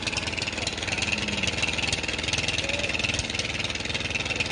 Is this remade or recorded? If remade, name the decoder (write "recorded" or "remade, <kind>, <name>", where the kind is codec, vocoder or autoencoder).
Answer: recorded